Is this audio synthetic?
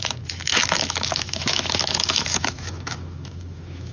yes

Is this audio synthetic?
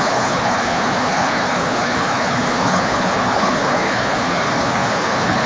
yes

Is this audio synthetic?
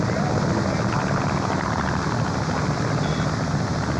no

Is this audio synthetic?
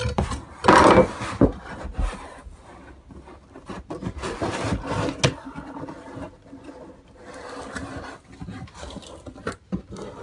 no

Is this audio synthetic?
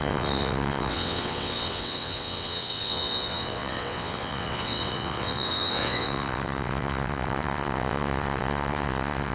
yes